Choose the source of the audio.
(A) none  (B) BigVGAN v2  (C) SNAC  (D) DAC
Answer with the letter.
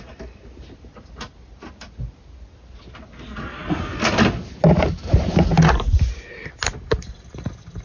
A